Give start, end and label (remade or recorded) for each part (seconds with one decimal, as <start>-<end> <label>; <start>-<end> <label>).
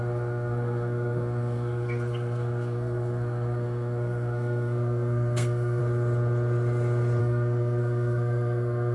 0.0-5.8 remade; 5.8-7.2 recorded; 7.2-8.9 remade